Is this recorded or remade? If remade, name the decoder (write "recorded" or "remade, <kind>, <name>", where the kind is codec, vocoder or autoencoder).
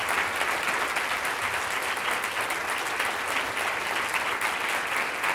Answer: recorded